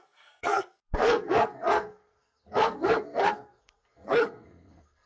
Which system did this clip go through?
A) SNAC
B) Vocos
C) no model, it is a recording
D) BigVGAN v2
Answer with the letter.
A